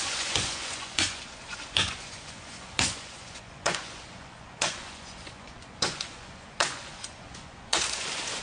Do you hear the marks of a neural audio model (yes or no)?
yes